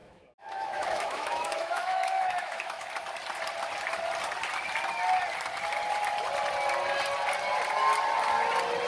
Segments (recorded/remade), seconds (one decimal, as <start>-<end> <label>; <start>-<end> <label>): 0.0-2.9 remade; 2.9-8.9 recorded